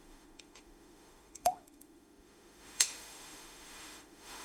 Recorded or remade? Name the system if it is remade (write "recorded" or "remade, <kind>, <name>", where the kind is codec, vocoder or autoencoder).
remade, autoencoder, DAC-VAE